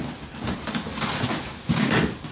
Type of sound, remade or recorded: recorded